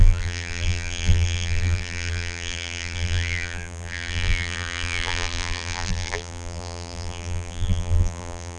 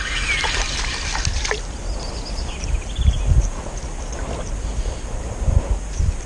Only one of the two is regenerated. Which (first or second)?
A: first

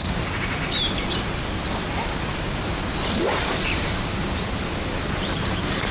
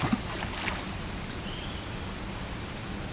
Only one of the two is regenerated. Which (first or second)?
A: first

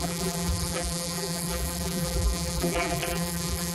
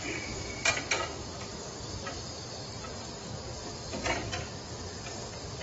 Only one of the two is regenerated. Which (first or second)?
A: first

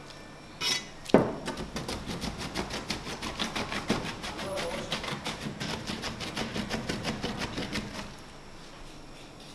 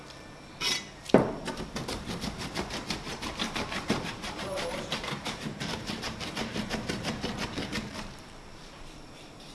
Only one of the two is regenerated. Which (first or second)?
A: second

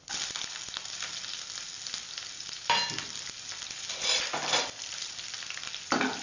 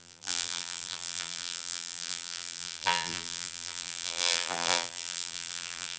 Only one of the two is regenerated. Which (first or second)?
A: second